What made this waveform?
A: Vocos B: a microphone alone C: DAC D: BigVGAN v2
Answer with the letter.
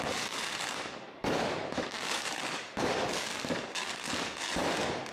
C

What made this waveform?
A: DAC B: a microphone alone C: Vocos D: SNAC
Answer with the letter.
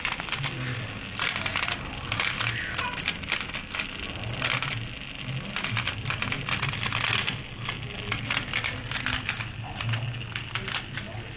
B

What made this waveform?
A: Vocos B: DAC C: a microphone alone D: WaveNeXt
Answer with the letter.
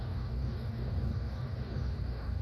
B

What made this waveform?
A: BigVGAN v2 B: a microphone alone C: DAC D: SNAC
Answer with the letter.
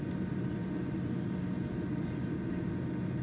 B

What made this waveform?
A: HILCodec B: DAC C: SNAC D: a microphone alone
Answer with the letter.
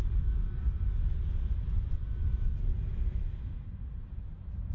D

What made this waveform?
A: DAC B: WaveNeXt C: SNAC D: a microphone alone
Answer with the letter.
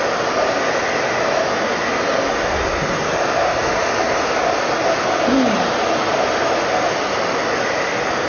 D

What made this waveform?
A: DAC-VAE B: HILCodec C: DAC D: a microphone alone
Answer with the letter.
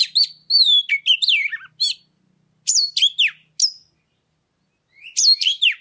D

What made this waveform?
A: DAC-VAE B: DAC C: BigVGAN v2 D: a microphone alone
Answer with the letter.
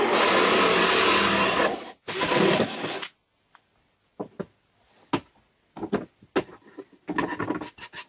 D